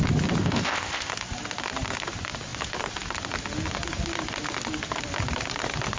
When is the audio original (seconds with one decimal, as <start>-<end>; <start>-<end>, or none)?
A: 0.0-0.4; 1.1-6.0